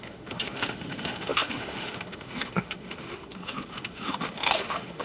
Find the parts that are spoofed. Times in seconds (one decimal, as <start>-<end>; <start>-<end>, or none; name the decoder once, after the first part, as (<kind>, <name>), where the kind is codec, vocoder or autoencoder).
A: 0.0-5.0 (autoencoder, DAC-VAE)